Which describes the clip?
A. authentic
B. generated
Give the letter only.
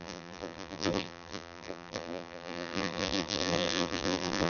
B